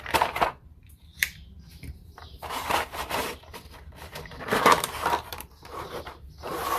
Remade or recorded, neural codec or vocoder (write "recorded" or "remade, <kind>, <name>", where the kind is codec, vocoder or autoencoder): remade, vocoder, BigVGAN v2